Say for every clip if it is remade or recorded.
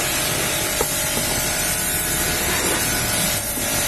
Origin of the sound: remade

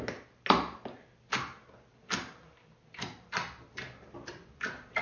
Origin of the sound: recorded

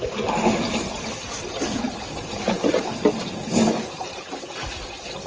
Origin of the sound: recorded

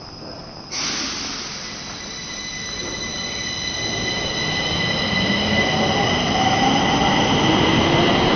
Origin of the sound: recorded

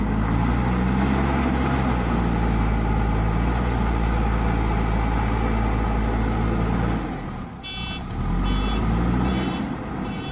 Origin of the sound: recorded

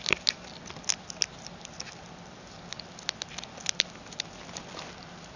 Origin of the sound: recorded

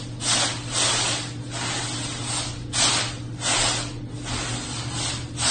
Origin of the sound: recorded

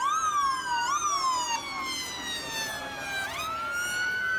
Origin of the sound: recorded